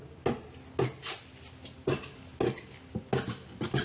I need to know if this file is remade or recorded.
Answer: recorded